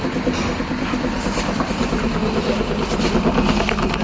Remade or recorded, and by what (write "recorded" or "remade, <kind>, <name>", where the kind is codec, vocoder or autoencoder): recorded